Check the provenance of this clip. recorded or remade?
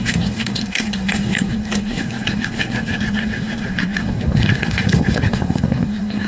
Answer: remade